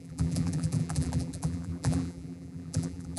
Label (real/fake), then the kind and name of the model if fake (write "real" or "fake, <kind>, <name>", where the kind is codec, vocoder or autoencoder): fake, vocoder, BigVGAN v2